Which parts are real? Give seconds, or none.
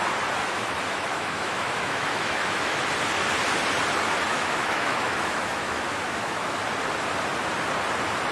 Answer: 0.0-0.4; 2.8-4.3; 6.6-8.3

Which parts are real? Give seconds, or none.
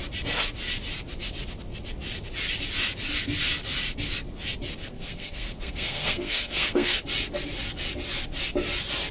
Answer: 0.0-4.8; 7.0-9.1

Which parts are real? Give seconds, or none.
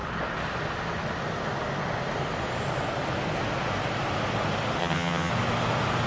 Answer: 0.0-4.8; 5.3-6.1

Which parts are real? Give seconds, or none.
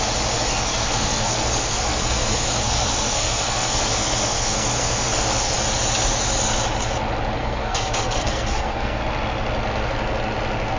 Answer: 0.0-0.5; 5.5-7.4; 9.0-10.8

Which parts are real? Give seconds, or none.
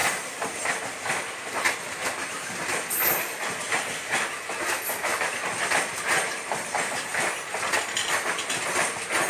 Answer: 0.0-9.3